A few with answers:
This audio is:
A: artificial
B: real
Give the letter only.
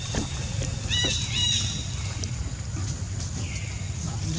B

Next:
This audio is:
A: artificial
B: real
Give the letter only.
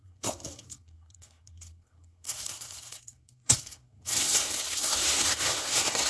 A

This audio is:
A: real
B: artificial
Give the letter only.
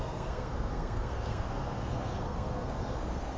B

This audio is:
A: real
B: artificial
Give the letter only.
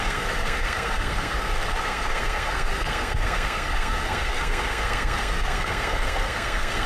B